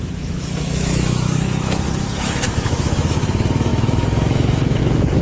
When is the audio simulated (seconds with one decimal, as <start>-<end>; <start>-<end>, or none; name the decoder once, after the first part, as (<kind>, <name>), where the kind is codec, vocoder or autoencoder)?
0.0-5.2 (autoencoder, DAC-VAE)